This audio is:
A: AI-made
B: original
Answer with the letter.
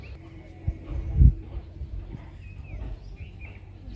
B